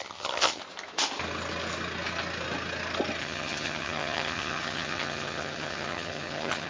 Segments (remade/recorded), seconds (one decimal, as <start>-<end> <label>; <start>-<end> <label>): 0.0-0.6 remade; 0.6-3.2 recorded; 3.2-6.7 remade